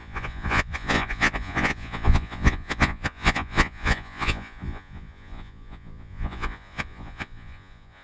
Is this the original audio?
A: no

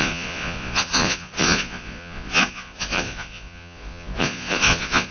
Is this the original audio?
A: no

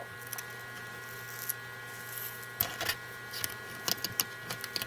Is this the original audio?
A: yes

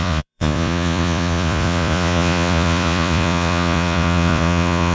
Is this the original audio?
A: no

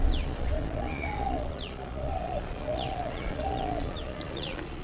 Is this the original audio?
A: no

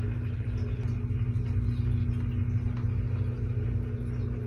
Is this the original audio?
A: yes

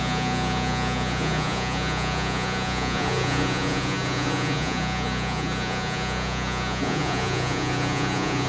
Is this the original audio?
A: no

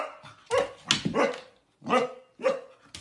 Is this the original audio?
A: yes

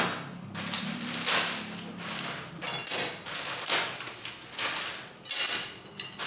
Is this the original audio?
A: yes